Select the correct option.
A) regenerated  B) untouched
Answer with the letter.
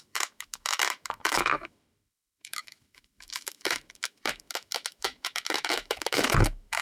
A